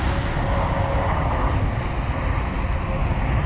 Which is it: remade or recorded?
recorded